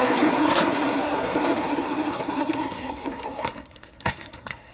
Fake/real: fake